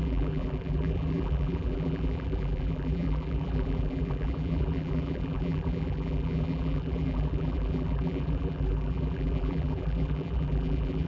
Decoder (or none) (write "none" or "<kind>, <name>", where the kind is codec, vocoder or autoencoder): vocoder, BigVGAN v2